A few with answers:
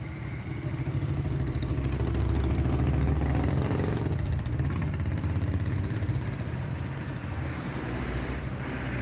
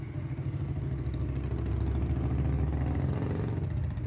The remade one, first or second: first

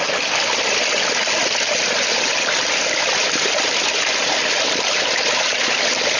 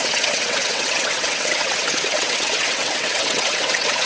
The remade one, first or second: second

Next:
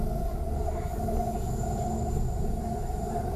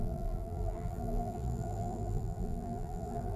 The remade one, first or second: second